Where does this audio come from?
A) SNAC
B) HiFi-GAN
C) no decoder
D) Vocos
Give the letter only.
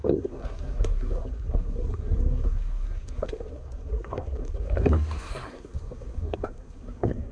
A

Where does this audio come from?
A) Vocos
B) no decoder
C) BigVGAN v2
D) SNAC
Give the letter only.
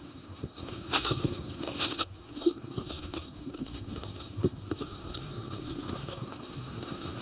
D